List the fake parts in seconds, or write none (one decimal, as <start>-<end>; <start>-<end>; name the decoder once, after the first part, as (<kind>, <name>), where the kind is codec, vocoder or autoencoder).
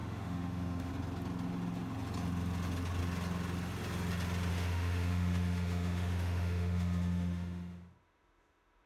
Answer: 0.0-0.9 (autoencoder, DAC-VAE); 4.5-8.9